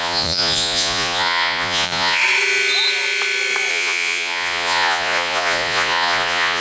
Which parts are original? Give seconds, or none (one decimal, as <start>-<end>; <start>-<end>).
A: 2.2-3.7